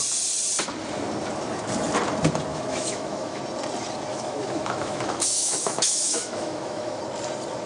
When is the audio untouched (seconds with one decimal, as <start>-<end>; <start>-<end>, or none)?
0.0-2.5; 3.4-4.1; 7.0-7.7